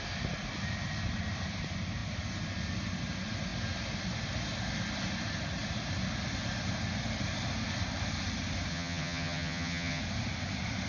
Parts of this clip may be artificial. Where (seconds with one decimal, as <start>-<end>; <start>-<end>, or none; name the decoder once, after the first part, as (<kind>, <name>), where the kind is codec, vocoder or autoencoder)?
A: 8.7-10.0 (vocoder, HiFi-GAN)